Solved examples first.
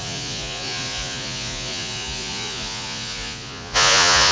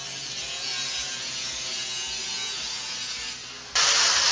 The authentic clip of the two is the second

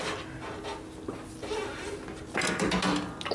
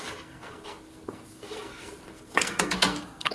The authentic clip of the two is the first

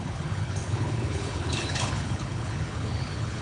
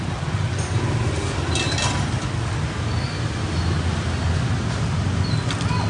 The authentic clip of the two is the second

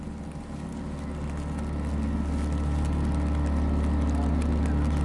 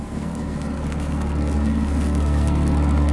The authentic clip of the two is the first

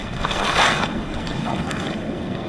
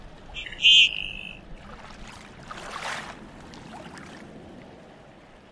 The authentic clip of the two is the second